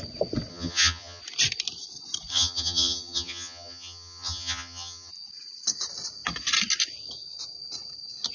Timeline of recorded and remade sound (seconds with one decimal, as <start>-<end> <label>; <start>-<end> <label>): 0.0-0.5 recorded; 0.5-1.2 remade; 1.2-2.3 recorded; 2.3-5.1 remade; 5.1-8.3 recorded